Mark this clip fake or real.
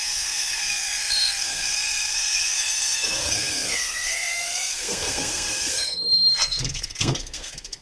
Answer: fake